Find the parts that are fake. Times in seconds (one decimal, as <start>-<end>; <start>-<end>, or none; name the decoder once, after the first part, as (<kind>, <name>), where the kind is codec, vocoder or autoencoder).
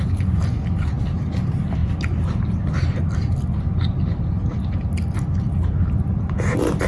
none